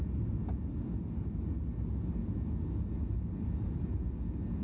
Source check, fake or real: real